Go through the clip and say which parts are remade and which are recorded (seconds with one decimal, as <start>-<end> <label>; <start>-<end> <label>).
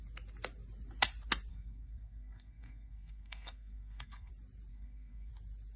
0.0-1.5 recorded; 1.5-4.3 remade; 4.3-4.7 recorded; 4.7-5.3 remade; 5.3-5.8 recorded